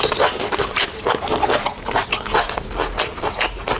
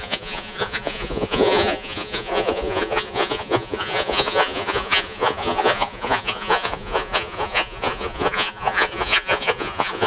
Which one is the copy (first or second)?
second